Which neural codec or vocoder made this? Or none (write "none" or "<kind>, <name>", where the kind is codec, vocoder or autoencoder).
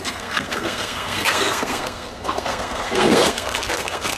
codec, SNAC